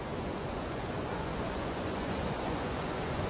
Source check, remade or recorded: remade